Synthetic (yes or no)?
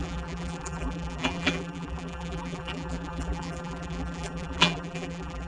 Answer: yes